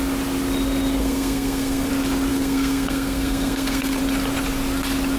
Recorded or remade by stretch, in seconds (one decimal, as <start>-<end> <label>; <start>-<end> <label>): 0.0-1.0 recorded; 1.0-1.9 remade; 1.9-2.3 recorded; 2.3-4.0 remade; 4.0-5.2 recorded